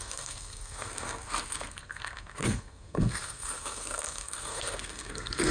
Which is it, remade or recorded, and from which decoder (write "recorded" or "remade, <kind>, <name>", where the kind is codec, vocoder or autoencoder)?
remade, codec, SNAC